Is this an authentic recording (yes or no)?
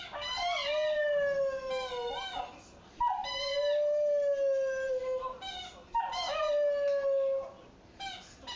yes